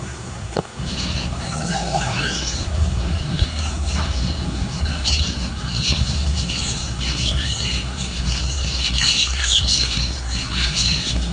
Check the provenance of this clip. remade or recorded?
remade